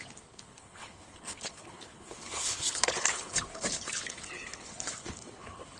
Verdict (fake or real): fake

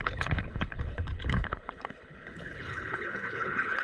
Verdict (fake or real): fake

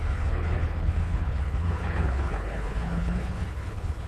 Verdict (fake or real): fake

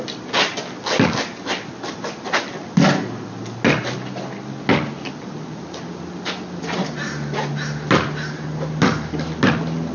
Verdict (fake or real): real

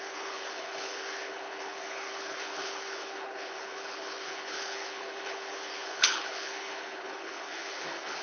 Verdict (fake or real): fake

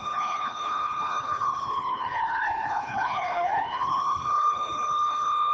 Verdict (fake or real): fake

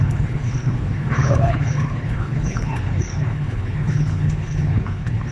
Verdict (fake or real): fake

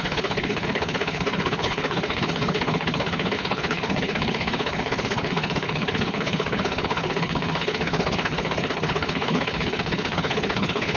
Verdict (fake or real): fake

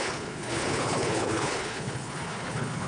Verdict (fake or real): fake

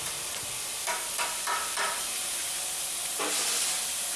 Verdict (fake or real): real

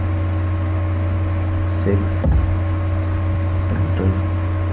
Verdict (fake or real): real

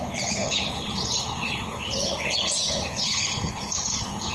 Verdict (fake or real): fake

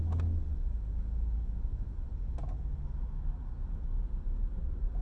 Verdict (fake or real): real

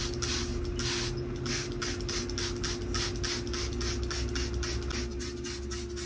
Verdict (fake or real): real